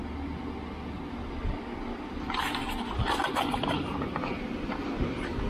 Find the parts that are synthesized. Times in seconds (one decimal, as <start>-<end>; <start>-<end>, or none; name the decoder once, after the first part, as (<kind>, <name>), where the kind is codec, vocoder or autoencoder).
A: none